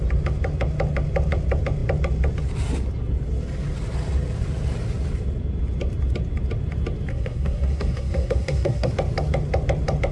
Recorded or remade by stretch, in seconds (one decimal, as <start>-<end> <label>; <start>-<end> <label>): 0.0-7.1 recorded; 7.1-8.9 remade; 8.9-10.1 recorded